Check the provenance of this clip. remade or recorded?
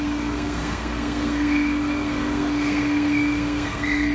remade